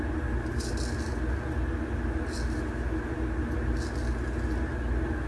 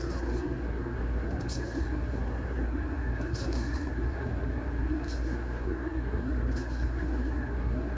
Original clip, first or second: first